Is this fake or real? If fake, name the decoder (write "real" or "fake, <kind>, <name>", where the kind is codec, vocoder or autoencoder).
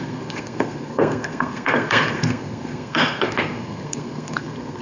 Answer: fake, codec, SNAC